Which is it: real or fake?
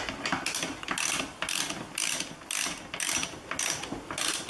real